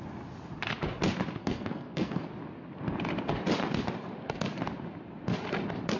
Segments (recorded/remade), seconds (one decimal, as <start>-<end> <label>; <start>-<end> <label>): 0.0-1.4 recorded; 1.4-2.3 remade; 2.3-6.0 recorded

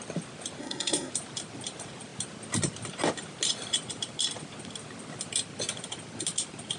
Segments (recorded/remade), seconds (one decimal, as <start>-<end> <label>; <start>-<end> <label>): 0.0-0.6 recorded; 0.6-1.1 remade; 1.1-6.8 recorded

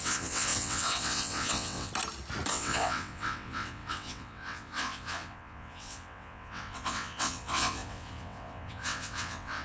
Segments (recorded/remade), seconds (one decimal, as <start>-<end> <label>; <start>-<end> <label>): 0.0-1.9 remade; 1.9-2.5 recorded; 2.5-9.6 remade

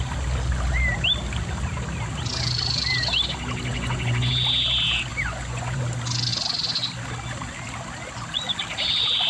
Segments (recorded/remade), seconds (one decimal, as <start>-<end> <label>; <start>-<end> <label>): 0.0-3.7 recorded; 3.7-4.3 remade; 4.3-5.1 recorded; 5.1-5.8 remade; 5.8-9.3 recorded